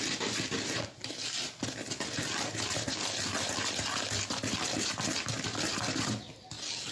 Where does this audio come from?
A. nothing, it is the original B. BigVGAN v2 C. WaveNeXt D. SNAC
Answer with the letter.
A